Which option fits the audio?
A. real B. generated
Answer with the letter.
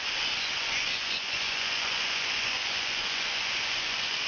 B